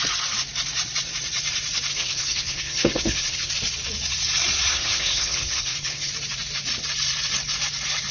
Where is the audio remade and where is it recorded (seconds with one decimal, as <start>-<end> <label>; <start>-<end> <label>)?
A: 0.0-1.9 recorded; 1.9-3.5 remade; 3.5-4.7 recorded; 4.7-6.1 remade; 6.1-8.1 recorded